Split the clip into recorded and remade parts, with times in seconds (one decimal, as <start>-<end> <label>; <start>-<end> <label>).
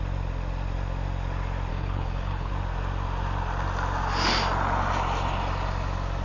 0.0-1.7 recorded; 1.7-2.5 remade; 2.5-6.2 recorded